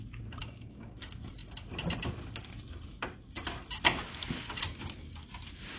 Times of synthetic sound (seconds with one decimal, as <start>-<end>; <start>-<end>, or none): 0.4-0.9